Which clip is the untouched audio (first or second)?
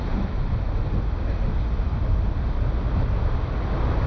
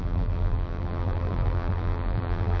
first